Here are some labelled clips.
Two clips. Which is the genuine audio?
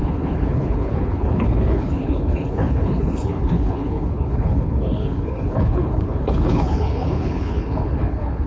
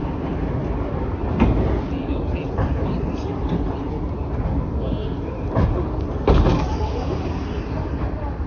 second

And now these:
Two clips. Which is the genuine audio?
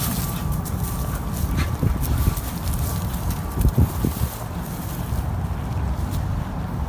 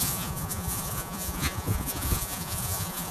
first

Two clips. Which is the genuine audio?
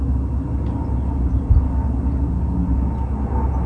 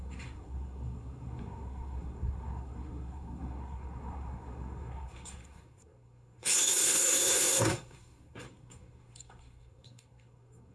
first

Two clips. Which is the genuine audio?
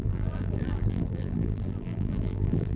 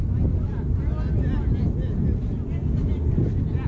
second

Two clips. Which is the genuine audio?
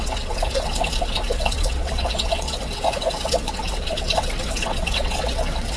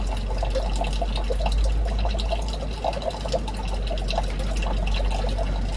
second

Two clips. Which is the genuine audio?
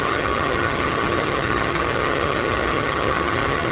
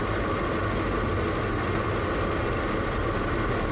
second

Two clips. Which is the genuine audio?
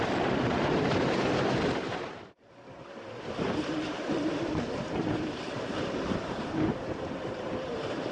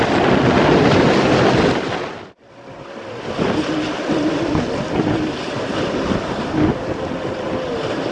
second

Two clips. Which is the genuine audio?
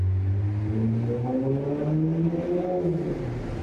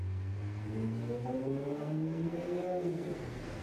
first